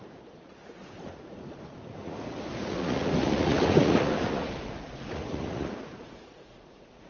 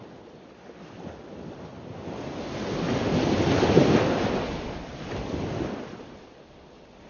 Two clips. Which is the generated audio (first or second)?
first